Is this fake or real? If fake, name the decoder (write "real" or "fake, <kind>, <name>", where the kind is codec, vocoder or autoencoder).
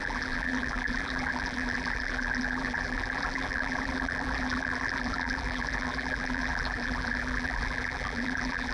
fake, vocoder, BigVGAN v2